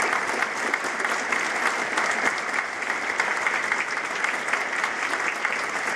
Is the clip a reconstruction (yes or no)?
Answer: no